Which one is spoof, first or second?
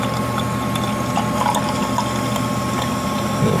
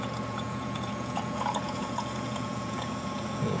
second